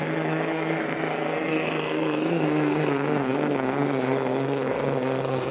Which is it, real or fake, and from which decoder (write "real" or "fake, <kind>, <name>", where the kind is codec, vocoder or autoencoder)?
fake, codec, SNAC